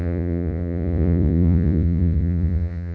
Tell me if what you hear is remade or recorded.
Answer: remade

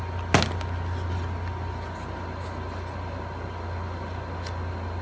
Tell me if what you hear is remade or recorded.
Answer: recorded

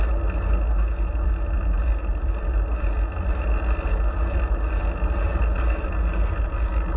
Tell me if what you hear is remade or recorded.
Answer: recorded